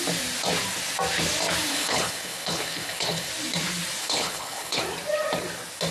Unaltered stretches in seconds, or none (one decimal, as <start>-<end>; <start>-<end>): 0.0-1.7; 3.3-4.0; 4.8-5.9

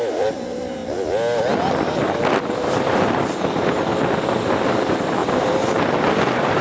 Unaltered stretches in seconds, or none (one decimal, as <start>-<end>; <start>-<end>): 0.8-2.5; 3.9-4.7

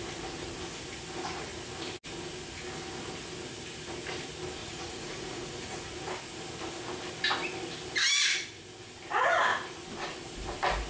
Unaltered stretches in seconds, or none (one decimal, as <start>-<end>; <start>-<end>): 0.0-4.6; 6.0-10.9

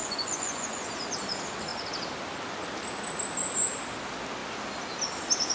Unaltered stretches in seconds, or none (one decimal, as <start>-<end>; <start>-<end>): 0.9-5.5

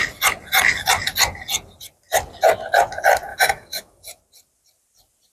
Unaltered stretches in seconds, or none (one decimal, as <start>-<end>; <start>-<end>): 0.0-3.3; 4.2-5.3

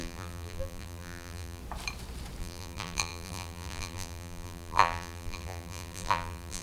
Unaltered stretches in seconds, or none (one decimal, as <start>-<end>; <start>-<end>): 1.6-2.4